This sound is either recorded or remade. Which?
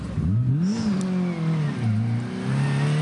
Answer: recorded